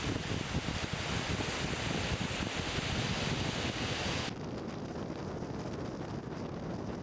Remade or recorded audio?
recorded